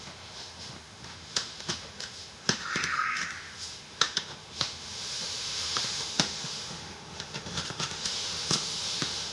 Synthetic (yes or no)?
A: yes